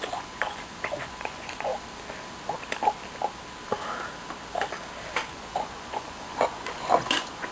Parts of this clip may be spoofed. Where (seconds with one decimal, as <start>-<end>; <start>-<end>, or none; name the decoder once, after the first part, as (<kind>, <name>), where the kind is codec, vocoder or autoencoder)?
0.0-1.7 (vocoder, Vocos); 5.3-7.5